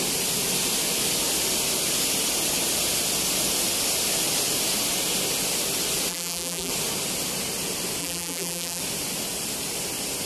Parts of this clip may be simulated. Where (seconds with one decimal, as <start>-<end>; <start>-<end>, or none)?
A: 6.1-6.7; 8.0-8.8